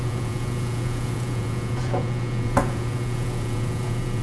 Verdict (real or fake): fake